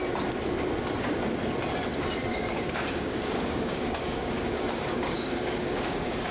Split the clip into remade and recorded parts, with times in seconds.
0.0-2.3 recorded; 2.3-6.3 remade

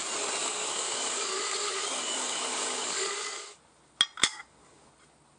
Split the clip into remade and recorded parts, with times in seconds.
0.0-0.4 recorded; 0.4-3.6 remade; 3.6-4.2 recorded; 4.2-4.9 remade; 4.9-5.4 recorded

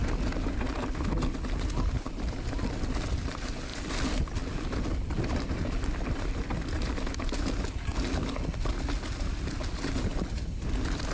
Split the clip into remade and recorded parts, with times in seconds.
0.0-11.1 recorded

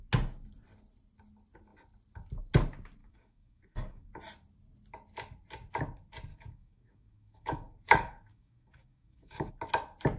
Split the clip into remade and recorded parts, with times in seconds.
0.0-3.0 recorded; 3.0-4.1 remade; 4.1-6.3 recorded; 6.3-9.5 remade; 9.5-10.2 recorded

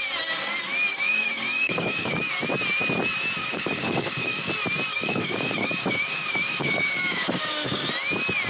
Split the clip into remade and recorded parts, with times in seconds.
0.0-0.9 recorded; 0.9-2.3 remade; 2.3-3.4 recorded; 3.4-4.5 remade; 4.5-4.9 recorded; 4.9-7.9 remade; 7.9-8.5 recorded